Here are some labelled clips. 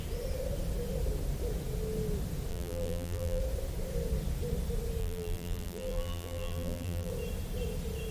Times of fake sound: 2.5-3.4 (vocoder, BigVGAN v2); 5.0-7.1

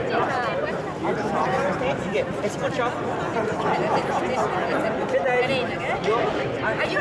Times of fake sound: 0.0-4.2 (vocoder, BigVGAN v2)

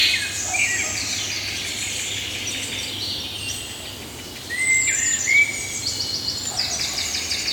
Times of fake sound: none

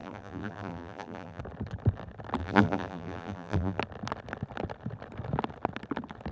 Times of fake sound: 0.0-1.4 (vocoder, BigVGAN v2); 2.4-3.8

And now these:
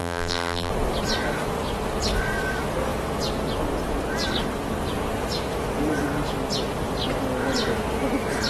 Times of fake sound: 0.0-0.7 (vocoder, BigVGAN v2)

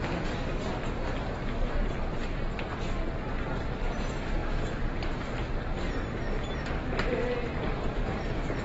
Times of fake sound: none

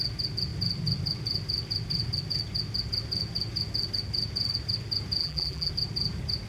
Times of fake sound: 5.2-5.7 (vocoder, BigVGAN v2)